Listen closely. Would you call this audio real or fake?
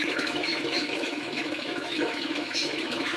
fake